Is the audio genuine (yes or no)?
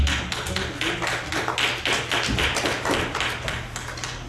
yes